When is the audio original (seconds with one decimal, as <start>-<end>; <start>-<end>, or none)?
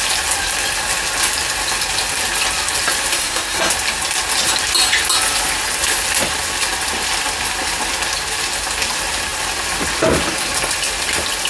0.0-3.1; 3.7-11.5